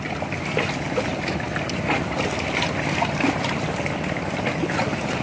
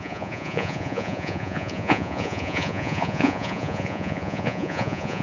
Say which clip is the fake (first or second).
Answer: second